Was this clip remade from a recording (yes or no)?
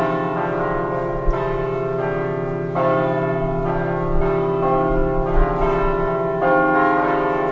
no